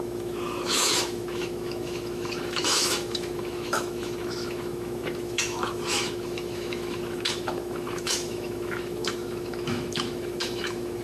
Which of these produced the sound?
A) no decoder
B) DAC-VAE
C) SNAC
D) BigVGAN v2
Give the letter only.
B